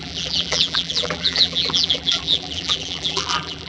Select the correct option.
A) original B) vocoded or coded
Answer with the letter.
B